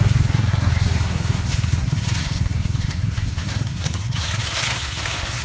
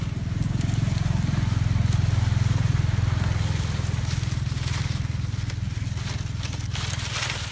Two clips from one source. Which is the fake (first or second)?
first